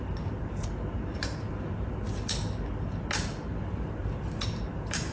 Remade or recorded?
recorded